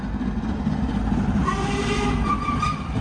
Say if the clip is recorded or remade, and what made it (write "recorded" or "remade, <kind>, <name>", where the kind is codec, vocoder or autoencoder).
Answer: recorded